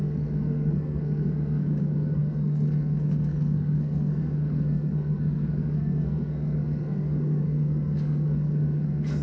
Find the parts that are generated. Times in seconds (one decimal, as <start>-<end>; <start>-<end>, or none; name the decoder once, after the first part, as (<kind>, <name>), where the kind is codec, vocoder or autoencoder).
0.0-9.2 (codec, SNAC)